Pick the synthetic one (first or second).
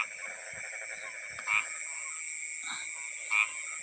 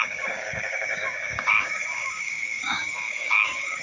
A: second